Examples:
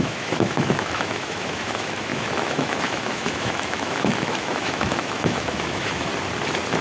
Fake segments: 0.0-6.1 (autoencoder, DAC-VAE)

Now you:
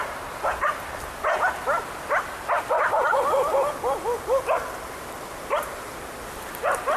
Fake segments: none

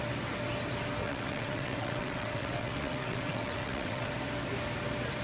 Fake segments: 1.0-4.1 (vocoder, WaveNeXt)

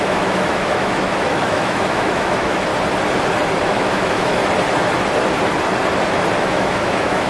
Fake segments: 0.0-2.7 (autoencoder, DAC-VAE); 3.6-4.4; 6.4-7.3

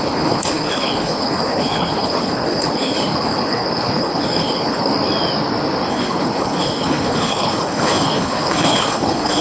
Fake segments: 0.0-4.9 (codec, HILCodec); 5.9-9.4

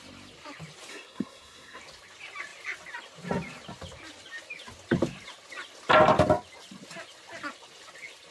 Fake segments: 0.9-1.8 (codec, SNAC)

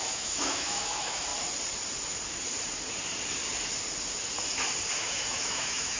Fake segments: 0.0-1.3 (autoencoder, DAC-VAE); 4.9-6.0